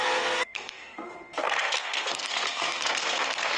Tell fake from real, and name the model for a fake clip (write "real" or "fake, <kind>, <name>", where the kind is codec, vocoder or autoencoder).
fake, codec, SNAC